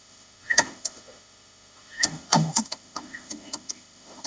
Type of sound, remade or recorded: remade